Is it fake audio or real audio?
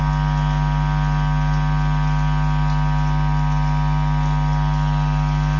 real